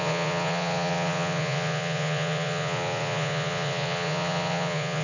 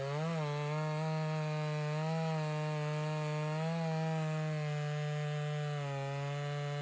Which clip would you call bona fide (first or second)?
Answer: second